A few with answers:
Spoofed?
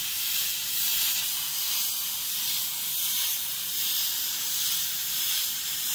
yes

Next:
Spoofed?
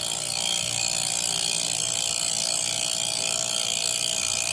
no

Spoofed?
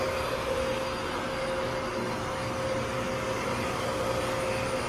no